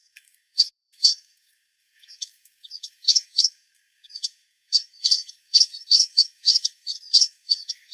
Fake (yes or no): yes